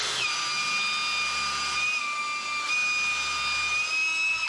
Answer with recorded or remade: recorded